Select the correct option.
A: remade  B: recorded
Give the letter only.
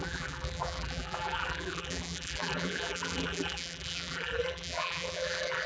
A